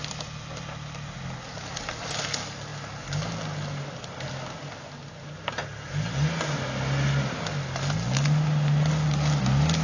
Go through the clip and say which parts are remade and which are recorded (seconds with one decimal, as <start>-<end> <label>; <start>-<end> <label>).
0.0-9.8 recorded